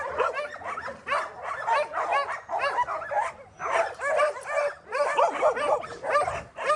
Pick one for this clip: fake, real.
real